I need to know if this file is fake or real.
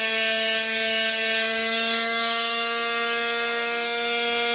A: fake